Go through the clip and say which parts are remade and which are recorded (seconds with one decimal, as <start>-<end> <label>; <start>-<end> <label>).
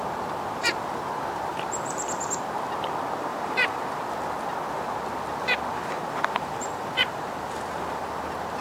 0.0-1.5 recorded; 1.5-2.4 remade; 2.4-3.3 recorded; 3.3-4.0 remade; 4.0-5.7 recorded; 5.7-8.0 remade; 8.0-8.6 recorded